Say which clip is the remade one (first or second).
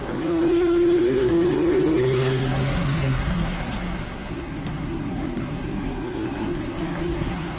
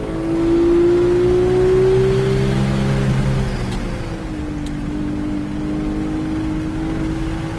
first